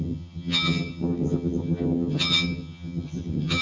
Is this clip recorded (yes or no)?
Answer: no